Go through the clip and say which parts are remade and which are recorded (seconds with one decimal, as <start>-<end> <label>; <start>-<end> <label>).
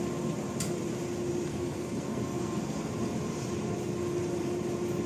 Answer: 0.0-1.5 recorded; 1.5-2.9 remade; 2.9-5.1 recorded